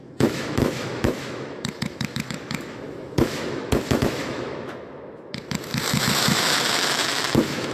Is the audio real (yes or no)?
no